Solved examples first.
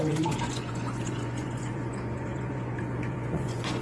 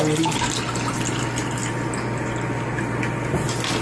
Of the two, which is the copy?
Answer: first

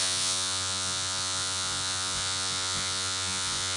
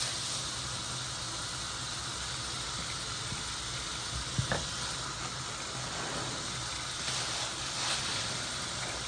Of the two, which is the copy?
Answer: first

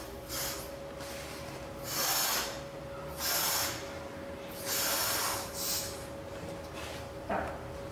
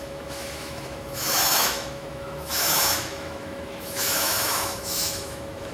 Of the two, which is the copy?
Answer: second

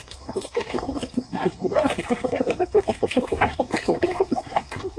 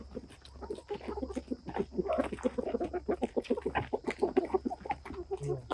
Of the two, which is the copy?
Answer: first